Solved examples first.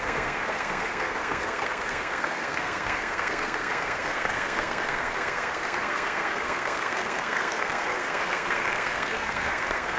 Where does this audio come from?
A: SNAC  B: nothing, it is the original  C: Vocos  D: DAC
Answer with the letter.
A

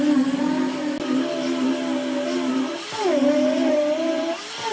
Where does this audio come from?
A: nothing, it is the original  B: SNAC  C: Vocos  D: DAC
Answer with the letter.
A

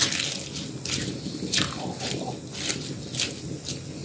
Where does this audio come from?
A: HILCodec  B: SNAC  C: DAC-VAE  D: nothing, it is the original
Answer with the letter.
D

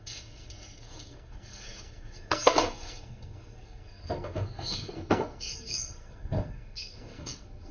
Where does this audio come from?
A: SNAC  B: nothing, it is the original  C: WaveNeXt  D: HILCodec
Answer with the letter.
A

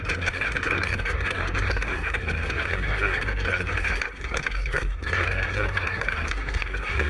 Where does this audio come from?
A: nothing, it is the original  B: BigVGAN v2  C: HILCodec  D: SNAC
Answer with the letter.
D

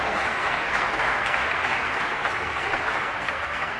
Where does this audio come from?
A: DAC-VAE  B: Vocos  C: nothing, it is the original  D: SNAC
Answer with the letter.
D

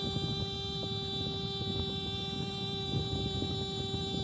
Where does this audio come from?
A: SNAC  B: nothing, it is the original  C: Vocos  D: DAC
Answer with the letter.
B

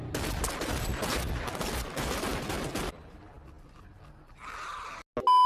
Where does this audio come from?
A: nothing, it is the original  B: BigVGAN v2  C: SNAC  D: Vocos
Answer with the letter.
A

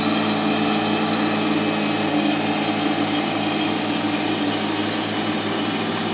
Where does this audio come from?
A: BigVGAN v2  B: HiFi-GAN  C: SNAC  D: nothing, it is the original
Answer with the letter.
D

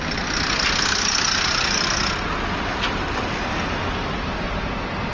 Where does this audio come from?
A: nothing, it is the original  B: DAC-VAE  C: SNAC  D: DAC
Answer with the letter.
A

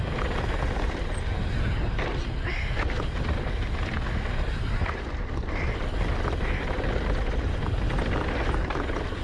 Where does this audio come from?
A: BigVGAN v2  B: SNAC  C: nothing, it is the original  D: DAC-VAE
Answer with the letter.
C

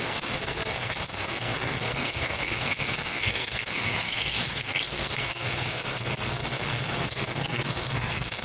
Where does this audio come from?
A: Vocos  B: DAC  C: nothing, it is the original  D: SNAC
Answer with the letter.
D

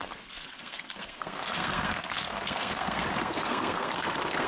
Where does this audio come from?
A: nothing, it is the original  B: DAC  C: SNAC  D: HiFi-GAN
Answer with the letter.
C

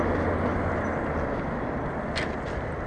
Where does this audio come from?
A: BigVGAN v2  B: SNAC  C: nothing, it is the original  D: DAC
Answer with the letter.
C